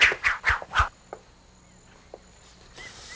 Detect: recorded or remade recorded